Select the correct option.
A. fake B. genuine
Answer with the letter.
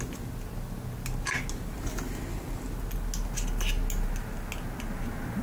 B